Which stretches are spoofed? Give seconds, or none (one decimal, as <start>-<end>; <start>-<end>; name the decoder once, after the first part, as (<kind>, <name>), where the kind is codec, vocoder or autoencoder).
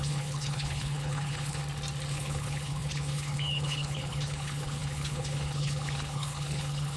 0.0-1.6 (codec, HILCodec); 2.1-7.0